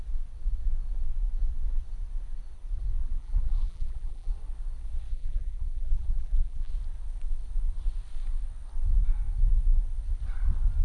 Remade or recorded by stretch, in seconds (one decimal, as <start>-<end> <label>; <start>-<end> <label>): 0.0-3.0 recorded; 3.0-4.3 remade; 4.3-5.1 recorded; 5.1-6.7 remade; 6.7-10.8 recorded

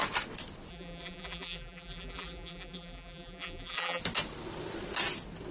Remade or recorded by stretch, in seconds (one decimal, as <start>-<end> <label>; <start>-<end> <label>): 0.0-0.7 recorded; 0.7-4.0 remade; 4.0-5.5 recorded